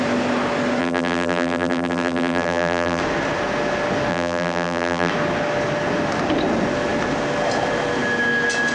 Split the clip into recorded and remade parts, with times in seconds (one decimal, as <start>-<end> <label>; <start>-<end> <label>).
0.0-0.8 recorded; 0.8-3.0 remade; 3.0-4.1 recorded; 4.1-5.1 remade; 5.1-8.7 recorded